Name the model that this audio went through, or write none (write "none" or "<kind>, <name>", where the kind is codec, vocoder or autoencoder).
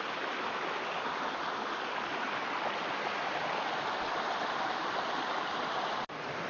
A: none